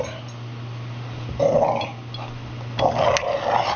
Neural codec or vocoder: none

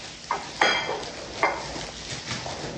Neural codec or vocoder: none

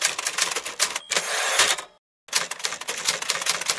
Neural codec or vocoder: none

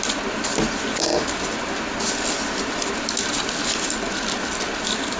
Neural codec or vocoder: none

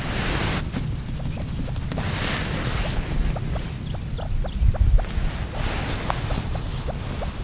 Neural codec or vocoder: none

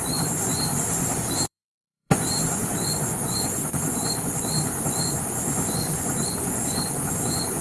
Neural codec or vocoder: vocoder, Vocos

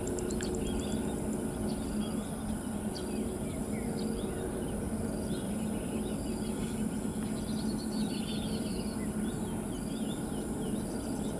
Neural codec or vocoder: none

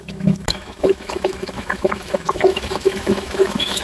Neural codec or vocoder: autoencoder, DAC-VAE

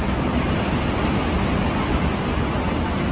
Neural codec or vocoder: none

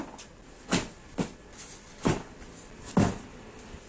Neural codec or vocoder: none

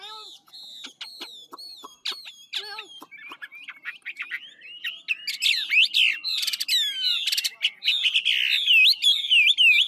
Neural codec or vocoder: none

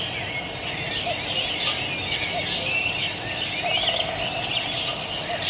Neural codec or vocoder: none